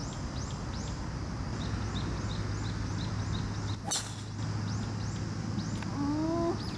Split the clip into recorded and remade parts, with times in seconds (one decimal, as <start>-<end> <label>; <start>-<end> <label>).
0.0-6.8 recorded